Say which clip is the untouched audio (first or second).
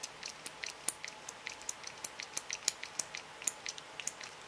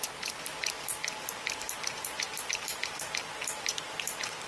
first